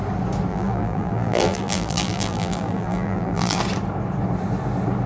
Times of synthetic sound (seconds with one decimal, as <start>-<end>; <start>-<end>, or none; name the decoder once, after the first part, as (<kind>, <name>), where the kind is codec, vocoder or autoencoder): 0.5-3.6 (vocoder, BigVGAN v2)